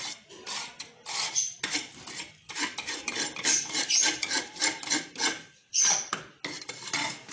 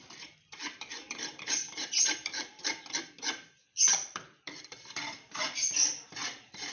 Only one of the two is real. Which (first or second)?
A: first